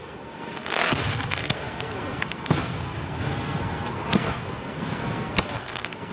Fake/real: fake